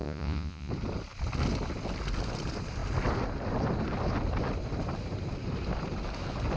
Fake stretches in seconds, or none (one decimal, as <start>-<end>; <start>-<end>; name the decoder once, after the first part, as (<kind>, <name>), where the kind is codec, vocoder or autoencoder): 0.0-0.7 (vocoder, Vocos)